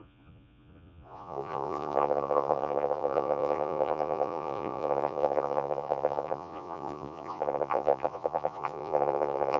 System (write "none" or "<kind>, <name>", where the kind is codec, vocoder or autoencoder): vocoder, Vocos